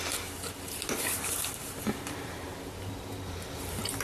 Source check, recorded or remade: recorded